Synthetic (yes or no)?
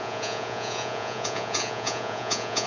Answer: yes